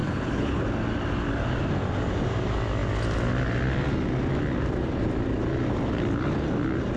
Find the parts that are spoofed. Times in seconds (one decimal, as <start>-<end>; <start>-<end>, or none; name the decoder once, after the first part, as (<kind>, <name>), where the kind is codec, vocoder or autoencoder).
0.0-0.6 (codec, HILCodec)